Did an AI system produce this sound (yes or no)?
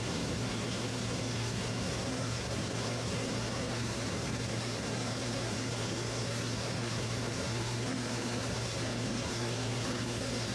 yes